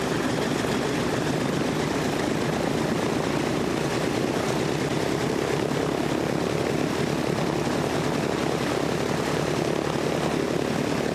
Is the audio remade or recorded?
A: recorded